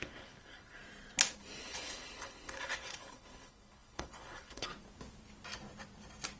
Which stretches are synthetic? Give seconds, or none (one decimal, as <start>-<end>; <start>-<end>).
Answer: 0.0-0.8; 1.6-4.7